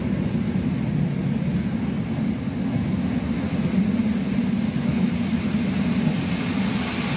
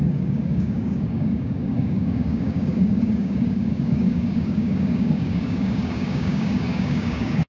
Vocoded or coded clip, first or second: second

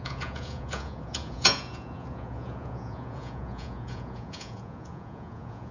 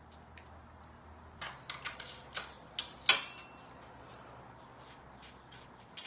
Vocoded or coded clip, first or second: first